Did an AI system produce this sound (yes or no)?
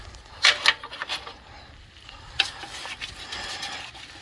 no